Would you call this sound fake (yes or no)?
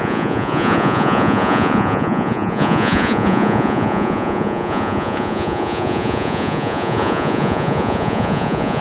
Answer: yes